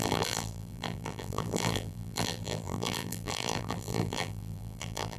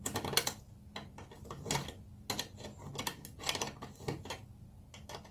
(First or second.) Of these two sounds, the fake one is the first